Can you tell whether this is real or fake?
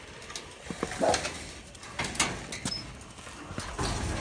real